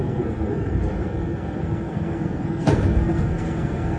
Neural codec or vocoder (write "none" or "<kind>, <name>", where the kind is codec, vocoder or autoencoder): codec, SNAC